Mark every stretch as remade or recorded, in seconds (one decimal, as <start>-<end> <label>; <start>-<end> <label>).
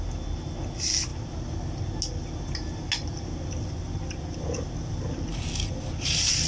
0.0-6.5 recorded